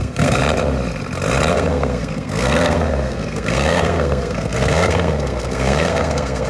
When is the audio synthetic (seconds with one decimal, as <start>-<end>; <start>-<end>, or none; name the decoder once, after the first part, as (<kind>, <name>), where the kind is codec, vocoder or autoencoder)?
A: 0.0-0.4 (codec, SNAC); 1.5-6.5